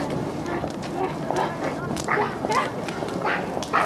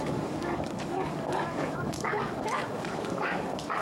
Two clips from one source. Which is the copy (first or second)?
second